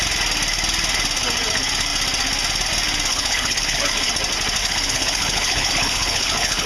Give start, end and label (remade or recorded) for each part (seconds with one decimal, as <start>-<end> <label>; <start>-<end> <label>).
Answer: 0.0-3.1 recorded; 3.1-4.1 remade; 4.1-4.6 recorded; 4.6-6.7 remade